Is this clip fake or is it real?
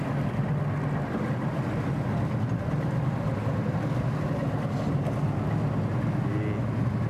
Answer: real